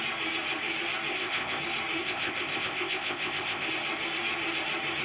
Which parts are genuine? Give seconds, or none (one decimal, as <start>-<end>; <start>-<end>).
0.0-1.1; 1.6-2.0; 3.7-5.0